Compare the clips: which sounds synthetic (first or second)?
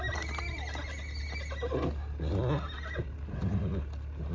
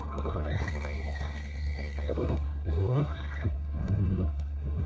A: second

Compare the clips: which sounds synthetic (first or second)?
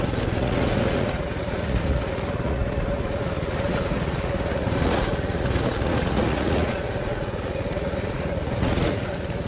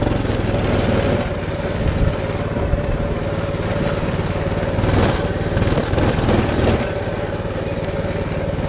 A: first